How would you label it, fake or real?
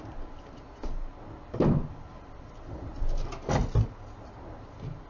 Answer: real